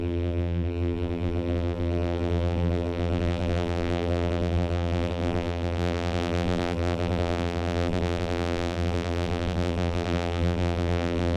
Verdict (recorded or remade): remade